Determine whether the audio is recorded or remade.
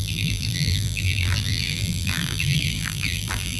remade